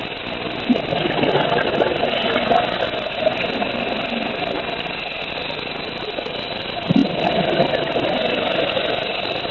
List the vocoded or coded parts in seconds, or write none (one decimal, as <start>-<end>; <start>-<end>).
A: none